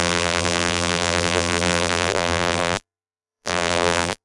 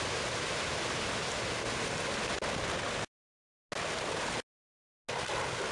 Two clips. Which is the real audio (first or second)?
second